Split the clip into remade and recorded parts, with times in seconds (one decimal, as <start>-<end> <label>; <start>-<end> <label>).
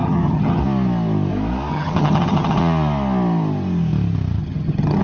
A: 0.0-0.6 remade; 0.6-1.7 recorded; 1.7-2.6 remade; 2.6-4.4 recorded; 4.4-5.0 remade